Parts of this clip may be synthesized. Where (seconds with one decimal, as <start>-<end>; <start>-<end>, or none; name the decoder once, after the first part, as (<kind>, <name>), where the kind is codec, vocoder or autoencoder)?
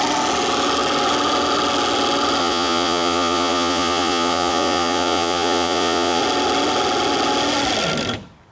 2.4-6.2 (vocoder, Vocos)